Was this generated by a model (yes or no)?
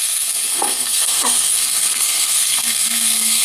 yes